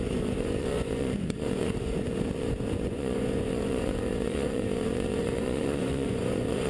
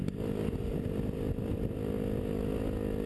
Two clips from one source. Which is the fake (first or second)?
first